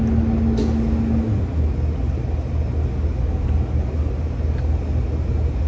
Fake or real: real